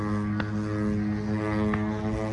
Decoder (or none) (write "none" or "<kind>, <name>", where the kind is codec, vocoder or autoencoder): none